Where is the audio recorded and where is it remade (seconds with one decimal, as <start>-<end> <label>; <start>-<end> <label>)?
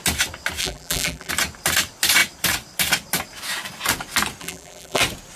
0.0-0.6 recorded; 0.6-1.3 remade; 1.3-4.4 recorded; 4.4-5.0 remade; 5.0-5.4 recorded